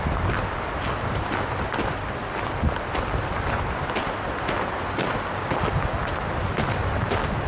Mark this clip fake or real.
real